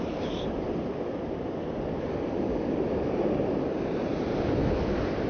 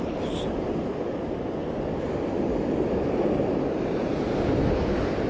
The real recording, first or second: second